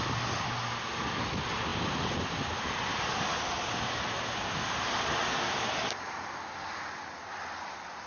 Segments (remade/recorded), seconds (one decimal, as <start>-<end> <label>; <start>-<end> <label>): 0.0-8.1 recorded